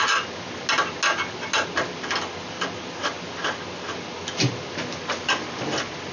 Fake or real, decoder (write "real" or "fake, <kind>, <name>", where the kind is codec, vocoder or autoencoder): real